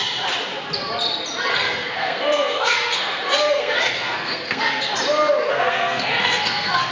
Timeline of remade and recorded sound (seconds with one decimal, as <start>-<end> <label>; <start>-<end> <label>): 0.0-1.5 recorded; 1.5-4.9 remade; 4.9-5.5 recorded; 5.5-6.9 remade